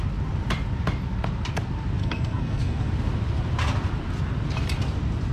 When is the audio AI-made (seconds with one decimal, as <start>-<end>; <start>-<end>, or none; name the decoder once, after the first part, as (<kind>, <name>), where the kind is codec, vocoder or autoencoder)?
2.0-2.9 (codec, SNAC)